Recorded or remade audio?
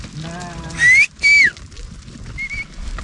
recorded